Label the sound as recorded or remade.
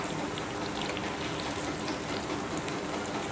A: recorded